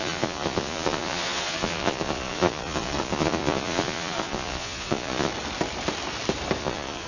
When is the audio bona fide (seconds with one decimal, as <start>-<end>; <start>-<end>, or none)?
5.3-6.6